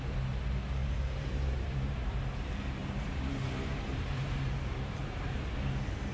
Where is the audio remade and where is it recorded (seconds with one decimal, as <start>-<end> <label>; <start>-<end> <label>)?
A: 0.0-0.8 recorded; 0.8-2.1 remade; 2.1-2.8 recorded; 2.8-5.5 remade; 5.5-6.1 recorded